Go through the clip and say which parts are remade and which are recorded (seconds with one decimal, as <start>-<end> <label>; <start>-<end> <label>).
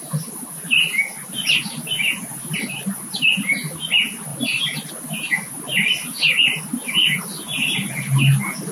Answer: 0.0-4.3 recorded; 4.3-4.9 remade; 4.9-8.7 recorded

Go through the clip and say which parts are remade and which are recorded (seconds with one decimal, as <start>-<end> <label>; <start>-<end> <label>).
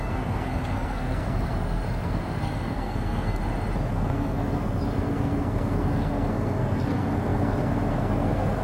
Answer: 0.0-3.4 remade; 3.4-3.9 recorded; 3.9-8.6 remade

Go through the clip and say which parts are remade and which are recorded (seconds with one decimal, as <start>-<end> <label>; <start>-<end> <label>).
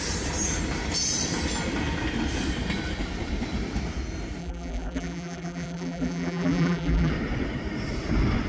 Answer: 0.0-4.4 recorded; 4.4-7.1 remade; 7.1-8.5 recorded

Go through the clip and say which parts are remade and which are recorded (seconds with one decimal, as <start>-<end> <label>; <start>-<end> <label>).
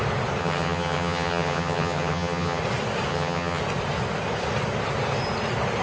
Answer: 0.0-0.4 recorded; 0.4-2.6 remade; 2.6-3.1 recorded; 3.1-3.6 remade; 3.6-5.8 recorded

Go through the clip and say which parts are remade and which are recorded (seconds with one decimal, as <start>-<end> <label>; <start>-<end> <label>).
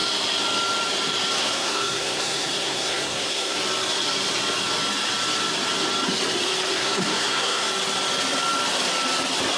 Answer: 0.0-1.4 recorded; 1.4-3.6 remade; 3.6-6.7 recorded; 6.7-7.7 remade; 7.7-9.6 recorded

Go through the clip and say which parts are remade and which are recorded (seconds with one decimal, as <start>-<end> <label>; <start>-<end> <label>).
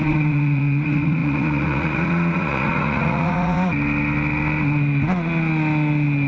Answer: 0.0-3.7 remade; 3.7-6.3 recorded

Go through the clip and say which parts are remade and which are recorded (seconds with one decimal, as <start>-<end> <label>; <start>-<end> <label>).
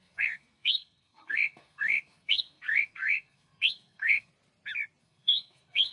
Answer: 0.0-4.3 remade; 4.3-5.0 recorded; 5.0-5.9 remade